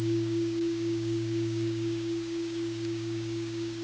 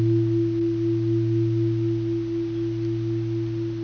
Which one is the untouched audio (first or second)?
second